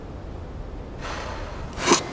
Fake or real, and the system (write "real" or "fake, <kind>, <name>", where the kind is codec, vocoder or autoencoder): real